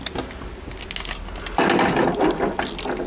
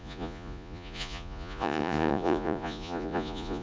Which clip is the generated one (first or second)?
second